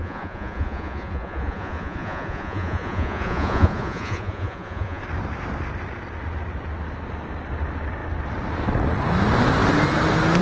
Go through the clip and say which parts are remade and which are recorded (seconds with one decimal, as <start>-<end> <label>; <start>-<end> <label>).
0.0-5.0 remade; 5.0-10.4 recorded